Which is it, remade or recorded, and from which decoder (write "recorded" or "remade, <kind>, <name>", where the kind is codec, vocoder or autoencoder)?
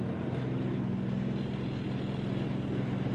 recorded